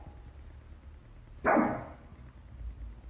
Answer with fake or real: real